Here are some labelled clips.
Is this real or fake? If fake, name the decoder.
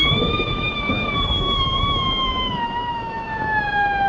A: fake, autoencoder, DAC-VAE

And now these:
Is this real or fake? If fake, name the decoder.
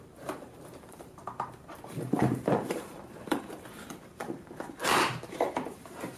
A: fake, vocoder, BigVGAN v2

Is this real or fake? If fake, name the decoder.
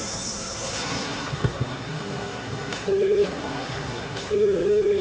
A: fake, codec, SNAC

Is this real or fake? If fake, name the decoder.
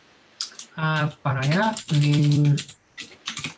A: fake, vocoder, BigVGAN v2